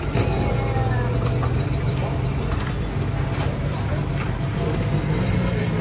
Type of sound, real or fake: real